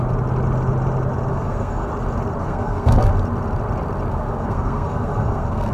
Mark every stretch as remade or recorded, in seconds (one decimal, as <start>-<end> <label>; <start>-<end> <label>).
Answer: 0.0-1.3 recorded; 1.3-1.9 remade; 1.9-2.4 recorded; 2.4-3.1 remade; 3.1-4.1 recorded; 4.1-5.7 remade